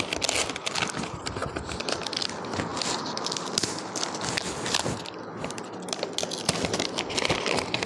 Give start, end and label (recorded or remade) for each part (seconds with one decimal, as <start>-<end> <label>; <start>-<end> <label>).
0.0-7.9 recorded